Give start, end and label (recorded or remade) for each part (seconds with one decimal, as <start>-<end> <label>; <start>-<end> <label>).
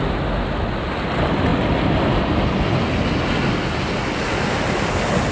0.0-5.3 recorded